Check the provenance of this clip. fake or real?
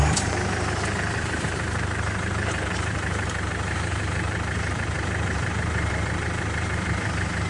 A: fake